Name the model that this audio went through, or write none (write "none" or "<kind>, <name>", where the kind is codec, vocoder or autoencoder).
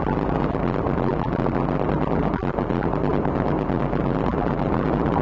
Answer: none